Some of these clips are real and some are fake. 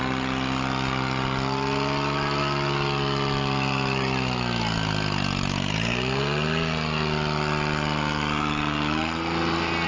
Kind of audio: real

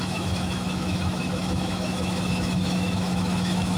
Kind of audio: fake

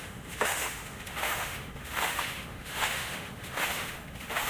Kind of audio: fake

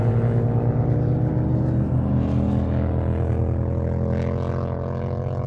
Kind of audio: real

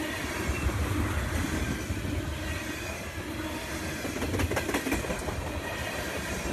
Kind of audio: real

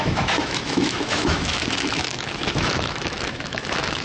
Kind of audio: fake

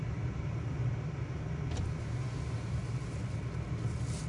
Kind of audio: real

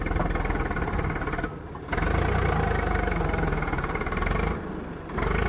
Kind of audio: real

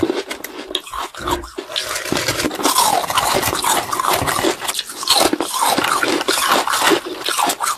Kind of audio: real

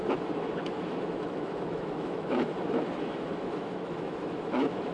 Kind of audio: fake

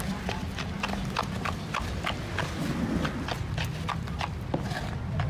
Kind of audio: real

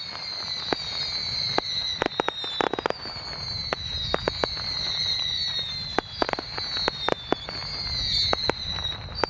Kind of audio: real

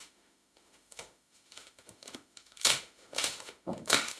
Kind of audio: fake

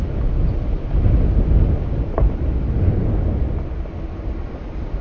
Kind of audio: real